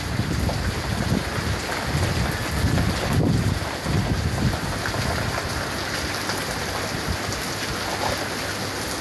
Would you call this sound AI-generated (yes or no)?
no